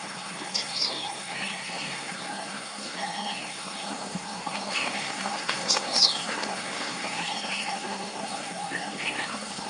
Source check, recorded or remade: remade